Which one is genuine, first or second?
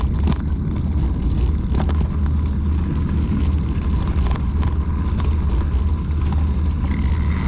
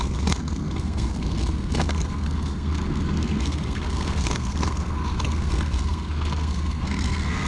first